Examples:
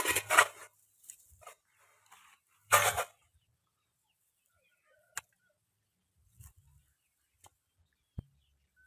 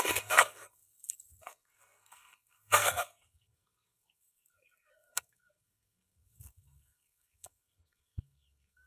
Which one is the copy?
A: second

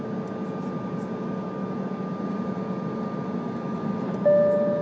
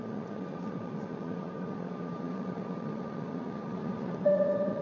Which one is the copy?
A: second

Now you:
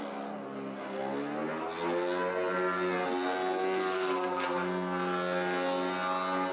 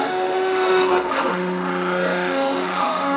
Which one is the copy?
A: second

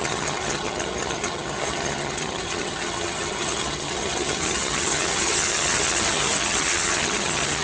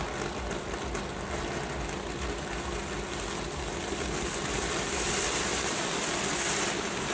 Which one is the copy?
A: first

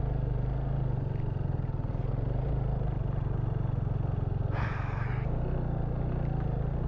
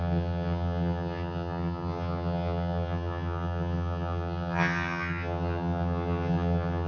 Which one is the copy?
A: second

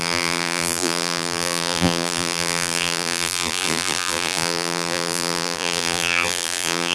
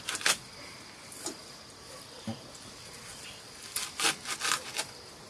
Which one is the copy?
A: first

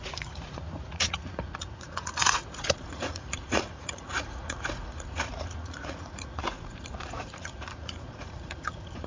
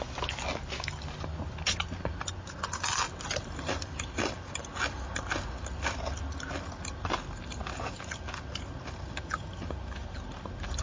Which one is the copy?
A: first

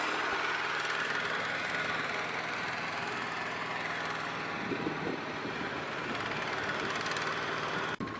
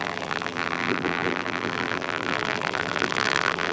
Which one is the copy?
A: second